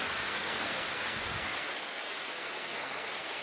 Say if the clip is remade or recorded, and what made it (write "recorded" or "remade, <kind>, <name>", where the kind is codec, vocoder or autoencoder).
remade, codec, SNAC